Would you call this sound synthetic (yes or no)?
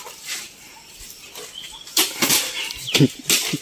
no